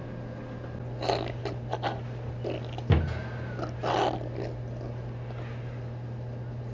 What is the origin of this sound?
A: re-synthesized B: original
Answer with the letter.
B